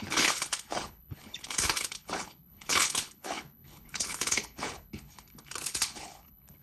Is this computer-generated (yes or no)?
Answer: yes